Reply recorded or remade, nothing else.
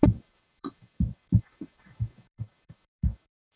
remade